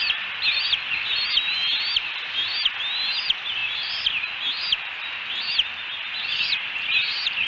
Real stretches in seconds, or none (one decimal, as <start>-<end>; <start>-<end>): 0.0-3.6; 4.2-7.5